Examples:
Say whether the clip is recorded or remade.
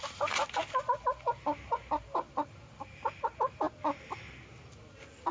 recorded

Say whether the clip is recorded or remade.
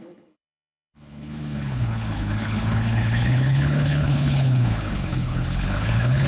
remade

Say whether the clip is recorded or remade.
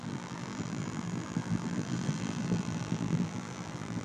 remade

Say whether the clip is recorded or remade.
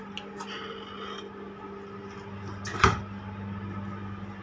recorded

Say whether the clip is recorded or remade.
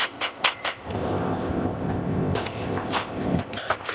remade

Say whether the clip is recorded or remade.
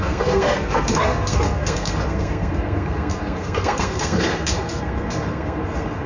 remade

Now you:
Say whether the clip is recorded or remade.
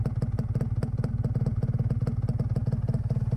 recorded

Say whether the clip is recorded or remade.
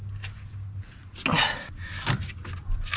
recorded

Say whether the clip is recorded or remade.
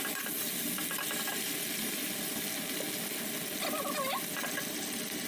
recorded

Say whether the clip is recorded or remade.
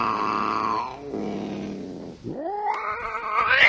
recorded